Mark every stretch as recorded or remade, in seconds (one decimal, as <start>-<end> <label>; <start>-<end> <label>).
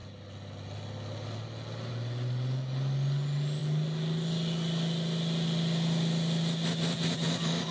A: 0.0-7.7 recorded